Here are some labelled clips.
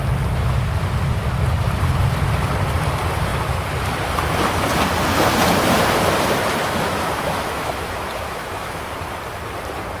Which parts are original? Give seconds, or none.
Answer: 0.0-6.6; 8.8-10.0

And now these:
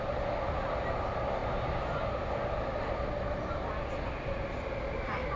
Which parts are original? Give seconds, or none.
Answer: 0.0-5.4